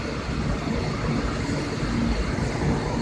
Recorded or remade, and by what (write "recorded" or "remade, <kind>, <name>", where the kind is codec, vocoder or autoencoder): recorded